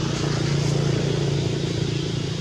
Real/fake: real